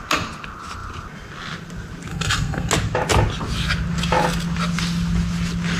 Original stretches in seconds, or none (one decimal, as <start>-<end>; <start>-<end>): 0.0-2.1; 2.7-5.8